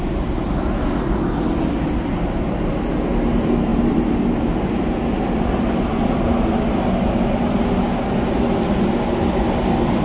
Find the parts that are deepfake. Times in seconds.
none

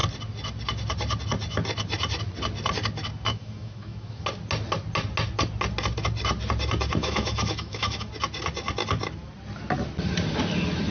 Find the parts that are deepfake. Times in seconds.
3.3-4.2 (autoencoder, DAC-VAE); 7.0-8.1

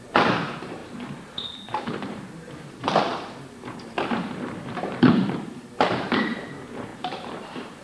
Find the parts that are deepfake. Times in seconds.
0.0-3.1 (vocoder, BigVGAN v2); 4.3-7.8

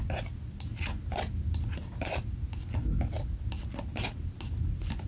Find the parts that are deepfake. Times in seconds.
none

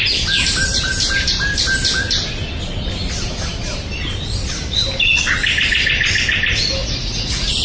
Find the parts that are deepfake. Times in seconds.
6.8-7.6 (vocoder, Vocos)